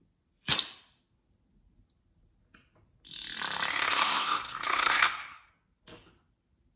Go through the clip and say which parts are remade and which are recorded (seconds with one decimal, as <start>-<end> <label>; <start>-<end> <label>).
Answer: 0.0-3.7 recorded; 3.7-5.5 remade; 5.5-6.8 recorded